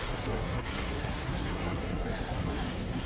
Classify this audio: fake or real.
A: fake